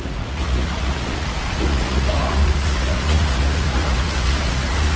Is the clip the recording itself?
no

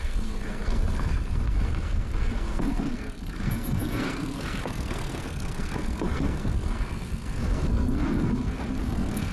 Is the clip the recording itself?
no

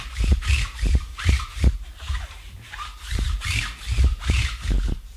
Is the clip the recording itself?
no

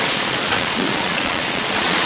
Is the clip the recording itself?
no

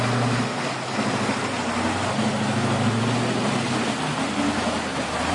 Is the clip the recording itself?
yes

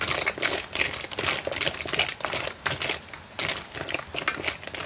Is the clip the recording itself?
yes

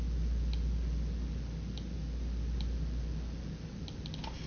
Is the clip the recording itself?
yes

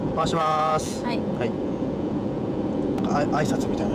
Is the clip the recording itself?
no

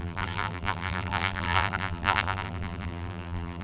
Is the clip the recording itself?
no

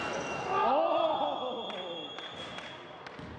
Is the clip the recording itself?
yes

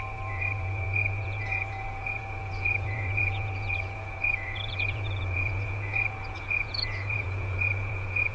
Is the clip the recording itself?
no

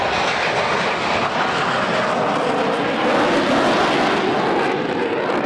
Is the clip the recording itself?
yes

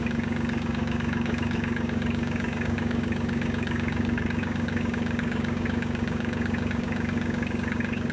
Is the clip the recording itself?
no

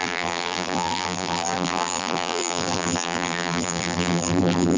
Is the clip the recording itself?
no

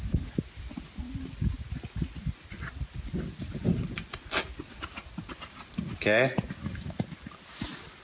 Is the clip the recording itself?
yes